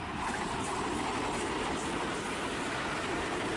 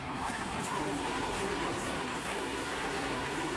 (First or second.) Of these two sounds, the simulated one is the second